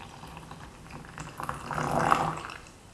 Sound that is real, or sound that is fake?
real